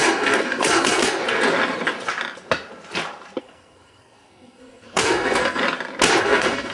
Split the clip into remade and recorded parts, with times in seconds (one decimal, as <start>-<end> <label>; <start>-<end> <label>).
0.0-1.2 remade; 1.2-3.4 recorded; 3.4-5.6 remade; 5.6-6.2 recorded; 6.2-6.7 remade